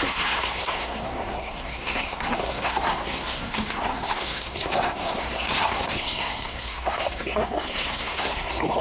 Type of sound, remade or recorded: remade